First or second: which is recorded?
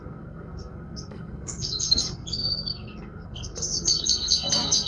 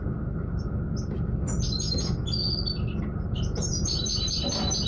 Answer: second